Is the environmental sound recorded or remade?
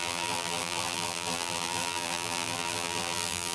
remade